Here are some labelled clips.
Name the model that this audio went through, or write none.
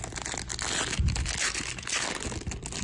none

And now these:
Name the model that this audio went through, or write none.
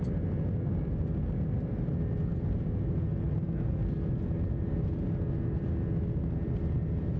none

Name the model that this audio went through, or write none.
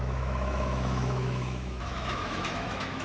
autoencoder, DAC-VAE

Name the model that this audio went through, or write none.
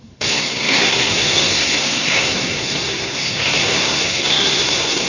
codec, SNAC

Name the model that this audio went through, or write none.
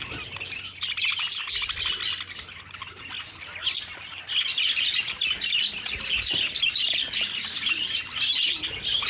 none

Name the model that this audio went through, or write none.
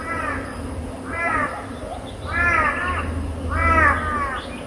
none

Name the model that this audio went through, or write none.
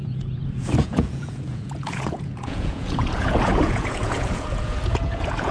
vocoder, Vocos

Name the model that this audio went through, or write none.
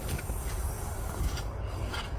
codec, DAC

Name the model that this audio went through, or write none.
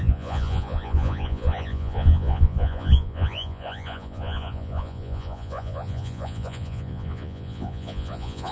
vocoder, Vocos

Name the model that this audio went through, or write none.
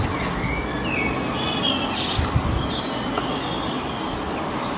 none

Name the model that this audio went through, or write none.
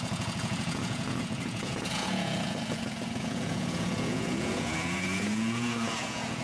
vocoder, Vocos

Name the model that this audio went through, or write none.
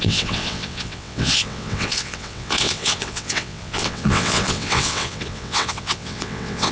vocoder, WaveNeXt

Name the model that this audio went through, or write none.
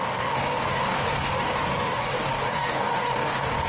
codec, DAC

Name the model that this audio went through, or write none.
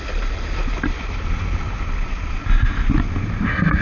none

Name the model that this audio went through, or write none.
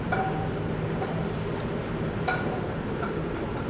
vocoder, BigVGAN v2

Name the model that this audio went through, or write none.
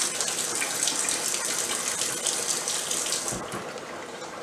none